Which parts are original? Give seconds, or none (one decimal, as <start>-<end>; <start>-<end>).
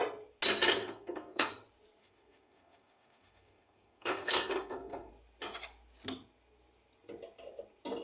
0.0-0.8; 1.5-2.0; 5.1-8.0